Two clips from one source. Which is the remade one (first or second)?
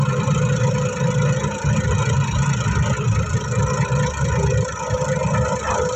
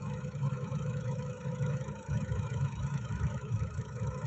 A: second